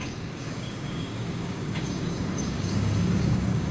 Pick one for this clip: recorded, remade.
remade